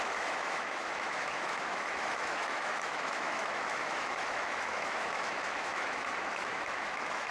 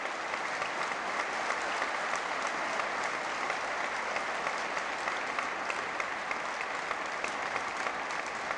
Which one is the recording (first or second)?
second